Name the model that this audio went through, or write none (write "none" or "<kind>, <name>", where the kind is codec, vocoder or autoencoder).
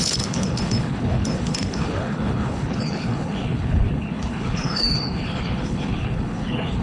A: codec, HILCodec